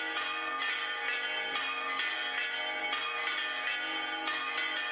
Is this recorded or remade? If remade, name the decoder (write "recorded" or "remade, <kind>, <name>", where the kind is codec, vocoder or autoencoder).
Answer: recorded